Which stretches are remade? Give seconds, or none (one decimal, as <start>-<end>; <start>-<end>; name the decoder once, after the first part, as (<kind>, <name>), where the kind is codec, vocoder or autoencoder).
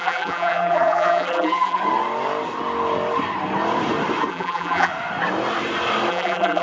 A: 0.0-1.8 (vocoder, BigVGAN v2); 4.3-4.9; 6.1-6.6